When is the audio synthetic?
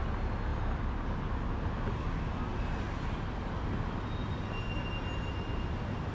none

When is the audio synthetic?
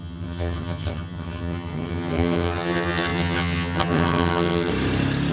0.0-4.7 (vocoder, HiFi-GAN)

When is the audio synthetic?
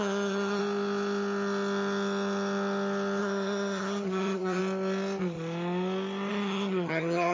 0.0-0.6 (vocoder, HiFi-GAN); 3.2-4.6; 6.3-7.3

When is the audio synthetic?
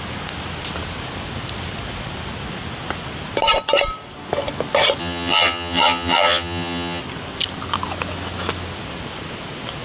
5.0-7.0 (vocoder, HiFi-GAN)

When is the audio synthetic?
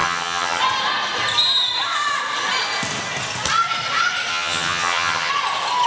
0.0-0.6 (vocoder, HiFi-GAN); 4.3-5.3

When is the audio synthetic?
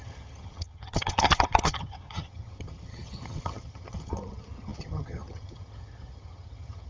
0.0-6.9 (vocoder, HiFi-GAN)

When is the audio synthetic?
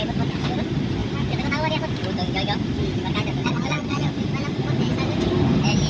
3.4-4.1 (vocoder, HiFi-GAN)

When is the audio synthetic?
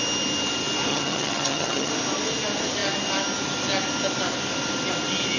0.9-1.9 (vocoder, HiFi-GAN)